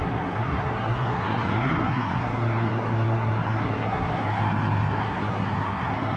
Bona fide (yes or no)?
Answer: no